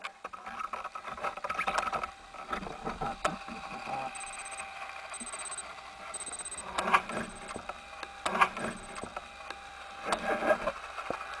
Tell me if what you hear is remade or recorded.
recorded